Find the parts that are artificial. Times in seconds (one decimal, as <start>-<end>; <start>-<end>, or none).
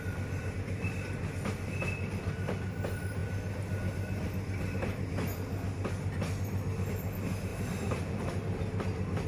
7.5-8.3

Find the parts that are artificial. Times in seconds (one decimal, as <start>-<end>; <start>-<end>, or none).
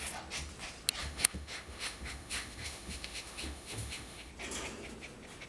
1.0-4.3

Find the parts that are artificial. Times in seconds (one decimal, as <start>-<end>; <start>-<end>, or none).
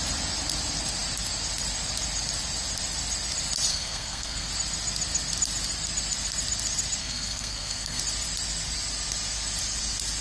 3.7-4.5; 7.0-8.0